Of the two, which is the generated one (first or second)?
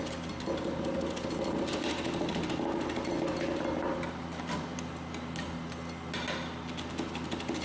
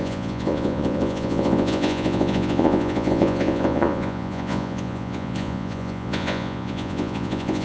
second